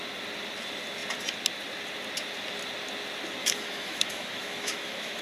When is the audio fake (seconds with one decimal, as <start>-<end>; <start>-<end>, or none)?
3.4-5.2